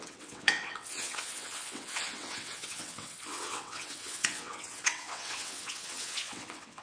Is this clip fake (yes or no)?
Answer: yes